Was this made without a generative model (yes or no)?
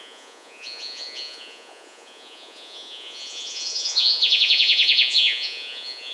no